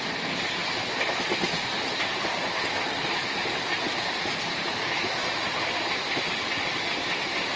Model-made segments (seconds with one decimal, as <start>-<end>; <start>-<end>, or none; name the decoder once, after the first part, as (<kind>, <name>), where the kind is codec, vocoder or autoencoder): 0.0-3.2 (vocoder, BigVGAN v2); 4.8-5.2; 5.7-7.6